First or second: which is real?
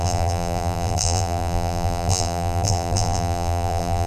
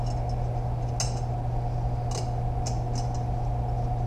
second